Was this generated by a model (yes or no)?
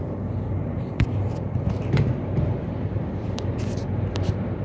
yes